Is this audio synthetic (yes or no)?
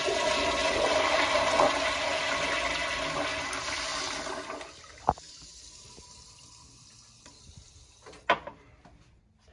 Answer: no